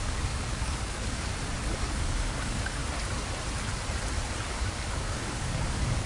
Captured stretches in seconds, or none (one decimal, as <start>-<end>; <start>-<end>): 1.3-1.8; 2.8-4.5